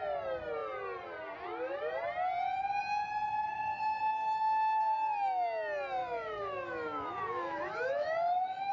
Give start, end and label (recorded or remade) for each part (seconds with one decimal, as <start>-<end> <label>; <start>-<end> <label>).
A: 0.0-3.3 recorded; 3.3-4.8 remade; 4.8-6.0 recorded; 6.0-8.7 remade